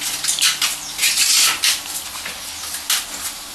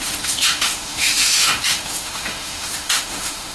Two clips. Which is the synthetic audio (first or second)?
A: second